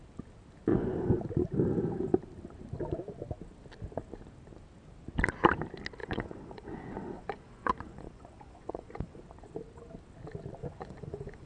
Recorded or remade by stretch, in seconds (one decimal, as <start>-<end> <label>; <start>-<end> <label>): 0.0-0.7 recorded; 0.7-1.2 remade; 1.2-6.0 recorded; 6.0-9.2 remade; 9.2-10.6 recorded; 10.6-11.5 remade